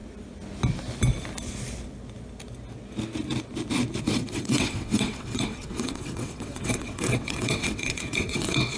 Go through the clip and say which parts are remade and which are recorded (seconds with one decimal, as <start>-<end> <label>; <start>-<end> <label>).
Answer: 0.0-4.0 recorded; 4.0-8.8 remade